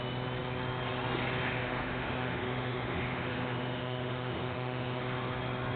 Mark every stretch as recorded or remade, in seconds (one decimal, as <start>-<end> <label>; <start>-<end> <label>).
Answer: 0.0-1.6 recorded; 1.6-5.0 remade; 5.0-5.8 recorded